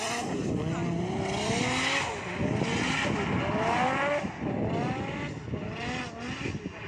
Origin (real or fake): real